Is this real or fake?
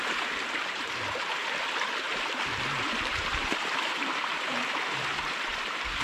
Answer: fake